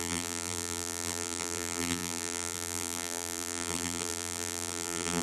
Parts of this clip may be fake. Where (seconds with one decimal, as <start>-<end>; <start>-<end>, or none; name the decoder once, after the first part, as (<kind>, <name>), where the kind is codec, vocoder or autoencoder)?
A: 0.0-5.2 (vocoder, BigVGAN v2)